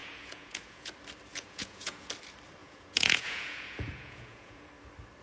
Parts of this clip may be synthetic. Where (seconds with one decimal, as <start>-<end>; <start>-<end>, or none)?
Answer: 0.0-0.9; 1.3-2.1; 2.6-4.7